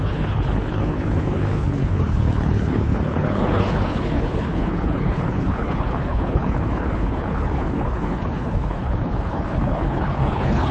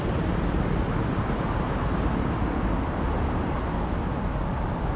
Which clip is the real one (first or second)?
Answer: second